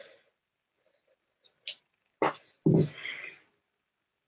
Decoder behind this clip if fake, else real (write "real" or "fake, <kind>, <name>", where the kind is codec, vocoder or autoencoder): real